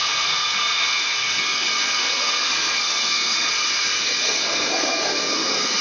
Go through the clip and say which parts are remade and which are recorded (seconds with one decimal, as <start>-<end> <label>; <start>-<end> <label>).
0.0-3.5 remade; 3.5-4.0 recorded; 4.0-5.8 remade